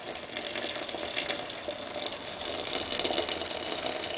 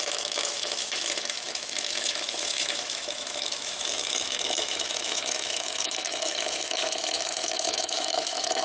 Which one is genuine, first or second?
first